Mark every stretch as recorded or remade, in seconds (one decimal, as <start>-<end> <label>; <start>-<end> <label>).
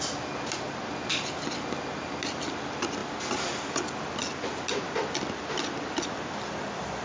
0.0-7.0 recorded